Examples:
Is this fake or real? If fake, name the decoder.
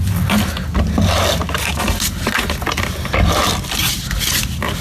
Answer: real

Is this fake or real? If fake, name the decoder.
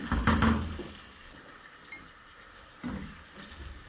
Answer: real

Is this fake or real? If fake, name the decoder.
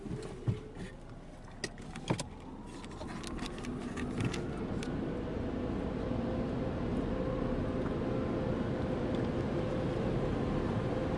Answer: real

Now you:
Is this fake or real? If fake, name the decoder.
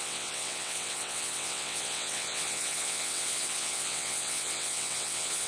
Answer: fake, vocoder, WaveNeXt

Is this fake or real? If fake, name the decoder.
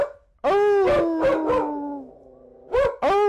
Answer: real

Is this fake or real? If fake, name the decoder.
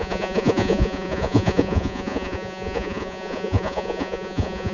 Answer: fake, vocoder, Vocos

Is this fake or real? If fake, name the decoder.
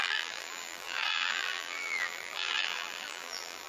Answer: fake, vocoder, BigVGAN v2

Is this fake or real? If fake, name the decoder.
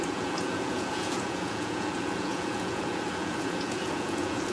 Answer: fake, vocoder, Vocos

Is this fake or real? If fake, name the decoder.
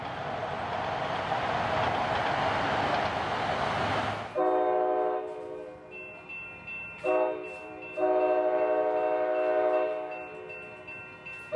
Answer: real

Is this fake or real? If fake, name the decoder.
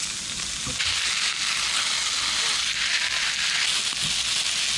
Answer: real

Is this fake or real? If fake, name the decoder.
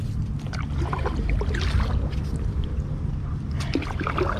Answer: real